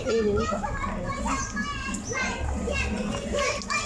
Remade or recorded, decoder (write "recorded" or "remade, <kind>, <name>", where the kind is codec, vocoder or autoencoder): recorded